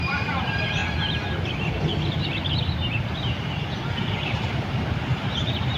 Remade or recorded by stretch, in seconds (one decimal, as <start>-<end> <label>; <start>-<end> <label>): 0.0-0.8 remade; 0.8-4.3 recorded; 4.3-5.8 remade